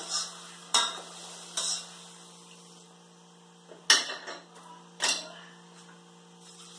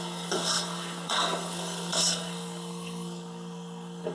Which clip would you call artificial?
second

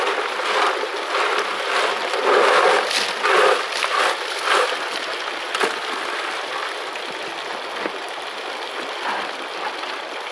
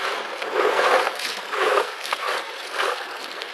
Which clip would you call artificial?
second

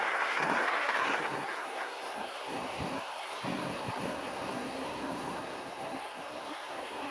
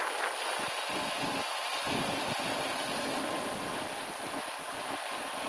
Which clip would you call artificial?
first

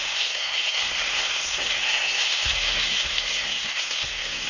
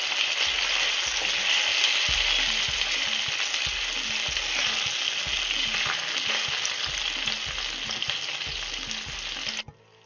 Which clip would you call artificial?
first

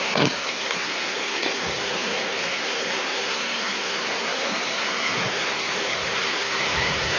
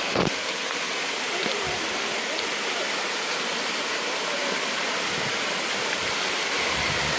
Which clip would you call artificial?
first